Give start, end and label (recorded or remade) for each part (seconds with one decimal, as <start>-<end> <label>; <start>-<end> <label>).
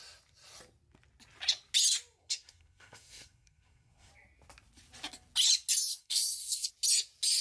0.0-2.2 recorded; 2.2-4.1 remade; 4.1-5.9 recorded; 5.9-6.7 remade; 6.7-7.4 recorded